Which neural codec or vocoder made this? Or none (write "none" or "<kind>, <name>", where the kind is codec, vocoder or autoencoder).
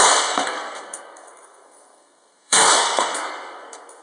codec, SNAC